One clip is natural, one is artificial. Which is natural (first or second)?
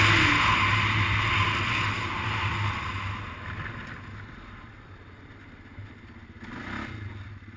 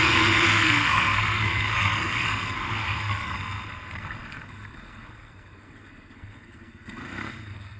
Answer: first